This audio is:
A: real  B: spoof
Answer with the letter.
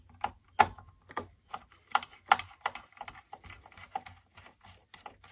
A